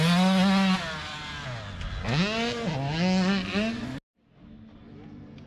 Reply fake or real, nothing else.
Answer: real